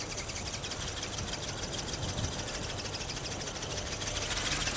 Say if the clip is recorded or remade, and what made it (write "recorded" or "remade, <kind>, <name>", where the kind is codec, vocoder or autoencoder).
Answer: recorded